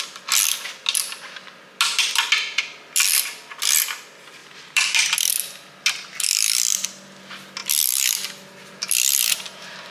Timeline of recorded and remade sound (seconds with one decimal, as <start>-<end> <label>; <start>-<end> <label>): 0.0-4.4 recorded; 4.4-5.3 remade; 5.3-9.9 recorded